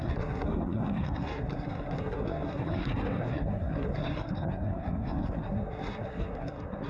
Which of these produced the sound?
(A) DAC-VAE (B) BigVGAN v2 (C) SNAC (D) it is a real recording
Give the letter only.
C